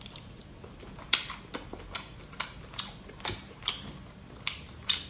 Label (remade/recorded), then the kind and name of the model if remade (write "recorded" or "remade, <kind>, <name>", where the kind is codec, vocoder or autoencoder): recorded